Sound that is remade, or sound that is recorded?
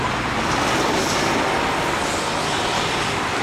recorded